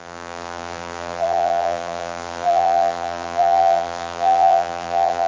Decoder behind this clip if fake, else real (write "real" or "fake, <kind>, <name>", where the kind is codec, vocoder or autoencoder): fake, vocoder, BigVGAN v2